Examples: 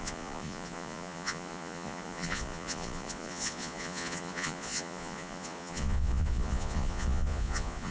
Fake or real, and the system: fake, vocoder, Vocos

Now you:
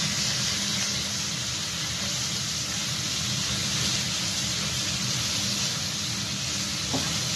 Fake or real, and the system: real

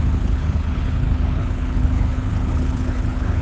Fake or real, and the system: fake, codec, HILCodec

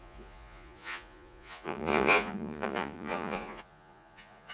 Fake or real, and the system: fake, vocoder, Vocos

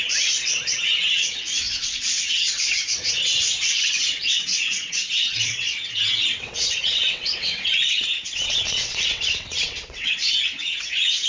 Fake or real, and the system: fake, vocoder, WaveNeXt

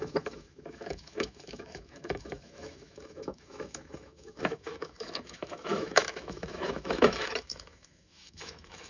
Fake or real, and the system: fake, autoencoder, DAC-VAE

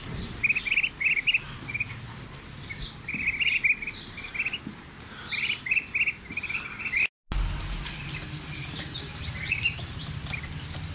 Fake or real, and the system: real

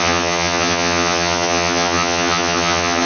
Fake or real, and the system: fake, vocoder, HiFi-GAN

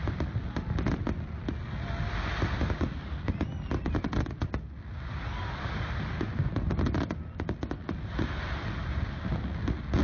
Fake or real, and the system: real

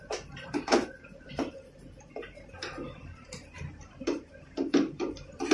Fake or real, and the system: fake, vocoder, BigVGAN v2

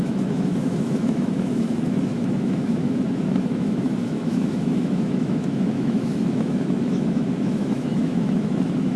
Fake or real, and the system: fake, autoencoder, DAC-VAE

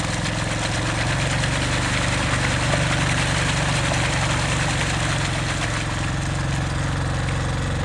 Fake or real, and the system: real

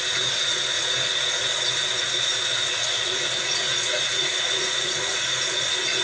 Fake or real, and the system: fake, vocoder, Vocos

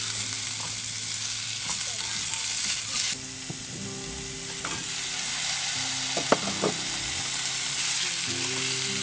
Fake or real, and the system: real